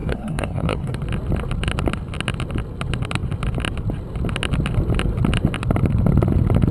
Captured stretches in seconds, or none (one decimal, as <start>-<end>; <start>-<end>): 1.0-6.7